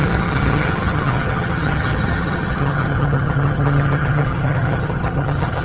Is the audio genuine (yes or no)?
no